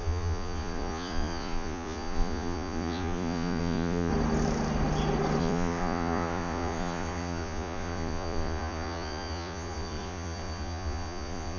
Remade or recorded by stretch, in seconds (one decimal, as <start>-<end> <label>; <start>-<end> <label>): 0.0-4.1 remade; 4.1-5.4 recorded; 5.4-11.6 remade

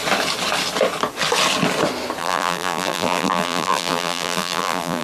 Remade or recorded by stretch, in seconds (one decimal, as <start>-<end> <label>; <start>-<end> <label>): 0.0-2.2 recorded; 2.2-5.0 remade